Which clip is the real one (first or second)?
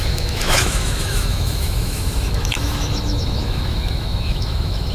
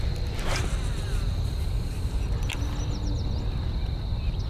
second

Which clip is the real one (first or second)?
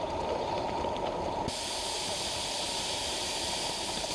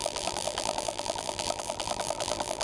first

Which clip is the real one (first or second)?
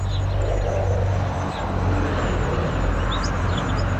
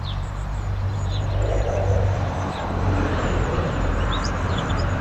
first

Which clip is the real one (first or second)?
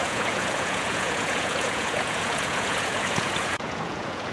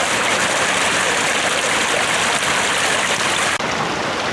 second